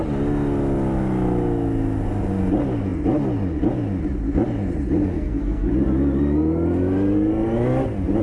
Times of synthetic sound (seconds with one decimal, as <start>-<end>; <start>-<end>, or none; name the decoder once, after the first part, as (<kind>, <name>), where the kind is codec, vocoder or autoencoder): 5.0-5.7 (codec, SNAC)